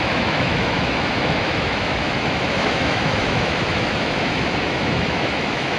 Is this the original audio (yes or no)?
no